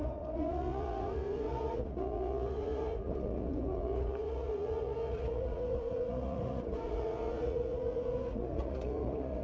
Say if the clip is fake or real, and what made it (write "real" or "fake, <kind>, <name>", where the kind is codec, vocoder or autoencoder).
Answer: fake, vocoder, Vocos